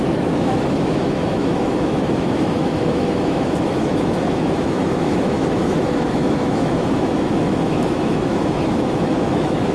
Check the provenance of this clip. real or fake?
fake